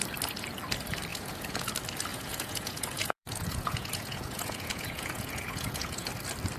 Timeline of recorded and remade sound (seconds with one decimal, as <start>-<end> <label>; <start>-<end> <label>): 0.0-1.1 recorded; 1.1-1.7 remade; 1.7-2.1 recorded; 2.1-6.1 remade; 6.1-6.6 recorded